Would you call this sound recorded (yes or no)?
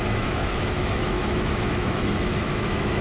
no